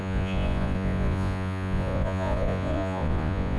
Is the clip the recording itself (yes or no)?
no